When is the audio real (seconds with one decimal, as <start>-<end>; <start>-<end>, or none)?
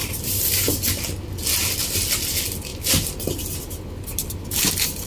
0.0-5.1